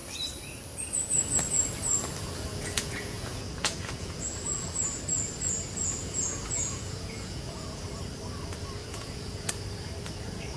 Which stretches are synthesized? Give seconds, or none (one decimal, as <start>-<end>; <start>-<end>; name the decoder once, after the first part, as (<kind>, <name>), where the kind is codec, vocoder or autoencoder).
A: 2.2-4.8 (vocoder, Vocos); 6.0-7.8; 8.8-9.5